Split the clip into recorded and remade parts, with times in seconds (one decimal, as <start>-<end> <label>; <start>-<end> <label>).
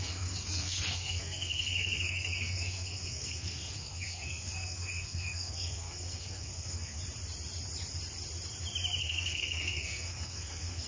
0.0-7.0 remade; 7.0-9.0 recorded; 9.0-10.9 remade